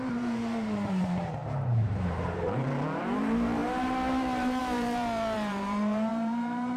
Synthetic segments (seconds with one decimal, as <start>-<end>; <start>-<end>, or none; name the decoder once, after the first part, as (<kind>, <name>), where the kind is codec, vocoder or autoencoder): 0.0-6.8 (vocoder, BigVGAN v2)